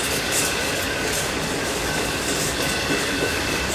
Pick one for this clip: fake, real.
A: fake